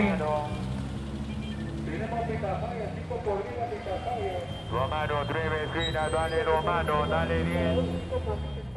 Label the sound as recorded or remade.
recorded